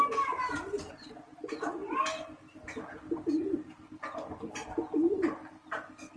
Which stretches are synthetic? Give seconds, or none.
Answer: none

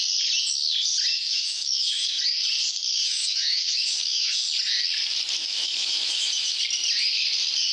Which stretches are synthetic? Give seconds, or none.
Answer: 1.1-2.2; 3.0-4.4; 5.4-6.6

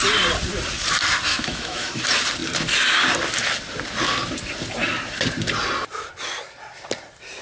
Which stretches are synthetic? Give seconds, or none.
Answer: 1.3-2.0

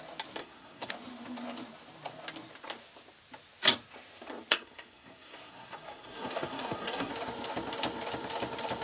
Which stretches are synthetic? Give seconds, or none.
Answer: 0.4-0.9; 4.5-7.1

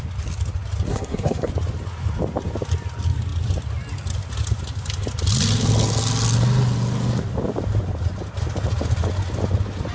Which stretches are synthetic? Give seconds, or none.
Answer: 0.9-1.5